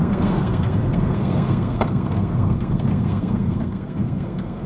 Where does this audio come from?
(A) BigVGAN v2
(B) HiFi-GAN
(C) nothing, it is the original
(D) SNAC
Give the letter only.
D